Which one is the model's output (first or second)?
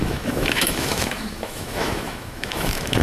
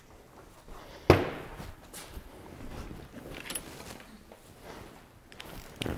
first